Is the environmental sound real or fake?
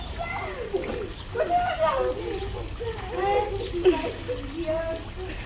real